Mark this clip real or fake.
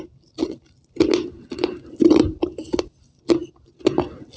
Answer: real